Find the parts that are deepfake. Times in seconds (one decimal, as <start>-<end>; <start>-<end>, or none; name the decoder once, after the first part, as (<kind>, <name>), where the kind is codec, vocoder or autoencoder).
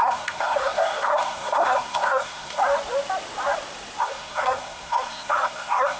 0.0-2.6 (codec, SNAC); 4.0-6.0